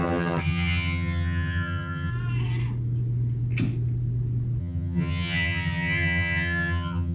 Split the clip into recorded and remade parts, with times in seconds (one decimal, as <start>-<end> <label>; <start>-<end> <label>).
0.0-2.1 remade; 2.1-4.6 recorded; 4.6-7.1 remade